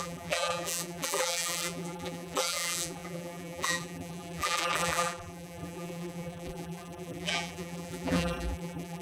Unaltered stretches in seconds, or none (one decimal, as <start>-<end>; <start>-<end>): none